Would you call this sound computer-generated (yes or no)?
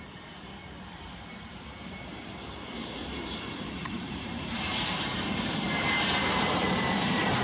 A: yes